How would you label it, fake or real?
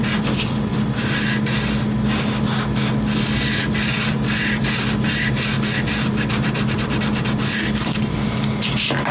real